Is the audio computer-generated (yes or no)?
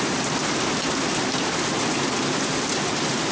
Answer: no